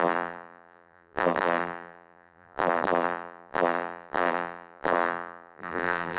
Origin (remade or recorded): remade